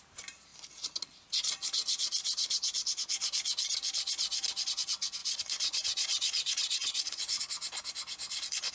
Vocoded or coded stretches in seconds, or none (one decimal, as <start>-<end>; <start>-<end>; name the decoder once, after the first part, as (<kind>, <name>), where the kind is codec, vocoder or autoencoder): 5.2-7.4 (vocoder, Vocos)